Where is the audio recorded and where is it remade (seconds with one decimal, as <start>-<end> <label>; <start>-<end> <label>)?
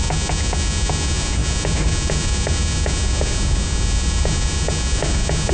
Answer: 0.0-5.5 recorded